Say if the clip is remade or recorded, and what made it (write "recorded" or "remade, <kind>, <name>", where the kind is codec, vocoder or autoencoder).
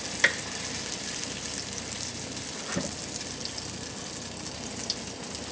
recorded